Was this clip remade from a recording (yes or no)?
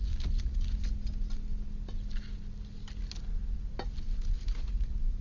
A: no